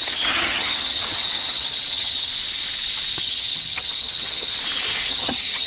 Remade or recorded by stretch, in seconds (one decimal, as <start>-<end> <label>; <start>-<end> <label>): 0.0-2.3 remade; 2.3-3.2 recorded; 3.2-4.5 remade; 4.5-5.1 recorded; 5.1-5.7 remade